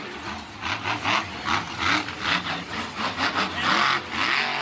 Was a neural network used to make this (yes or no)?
no